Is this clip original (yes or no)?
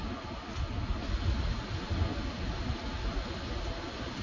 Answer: yes